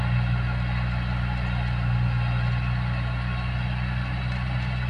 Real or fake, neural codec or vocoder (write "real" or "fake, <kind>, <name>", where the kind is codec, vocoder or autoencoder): real